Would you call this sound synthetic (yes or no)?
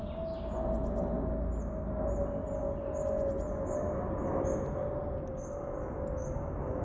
no